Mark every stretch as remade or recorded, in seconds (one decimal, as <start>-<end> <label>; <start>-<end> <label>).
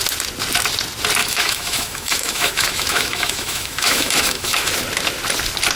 0.0-1.2 recorded; 1.2-4.7 remade; 4.7-5.8 recorded